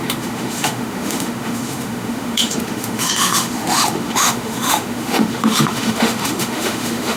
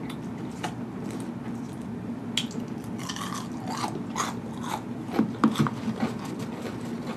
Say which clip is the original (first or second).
second